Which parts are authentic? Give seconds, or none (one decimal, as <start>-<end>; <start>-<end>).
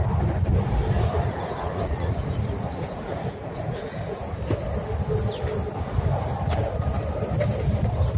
0.0-0.5; 4.4-8.2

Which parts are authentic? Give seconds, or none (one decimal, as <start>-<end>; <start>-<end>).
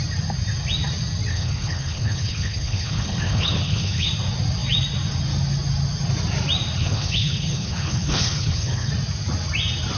0.0-1.3; 4.1-6.8; 8.9-10.0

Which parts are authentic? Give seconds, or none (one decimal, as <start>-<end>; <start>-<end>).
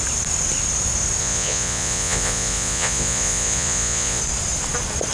0.0-1.2; 4.2-5.1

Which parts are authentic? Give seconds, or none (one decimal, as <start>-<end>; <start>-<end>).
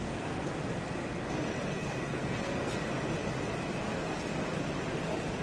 0.6-1.7; 2.7-5.4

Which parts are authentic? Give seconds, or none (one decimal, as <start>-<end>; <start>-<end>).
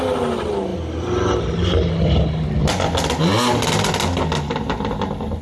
0.0-5.4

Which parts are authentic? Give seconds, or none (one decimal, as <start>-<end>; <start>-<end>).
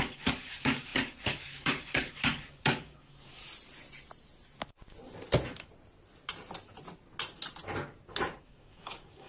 3.4-8.4